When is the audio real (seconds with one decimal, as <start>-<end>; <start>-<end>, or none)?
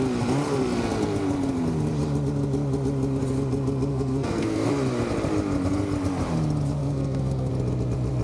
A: 0.0-3.9; 4.7-6.8; 7.5-8.2